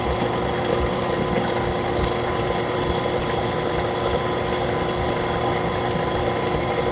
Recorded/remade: recorded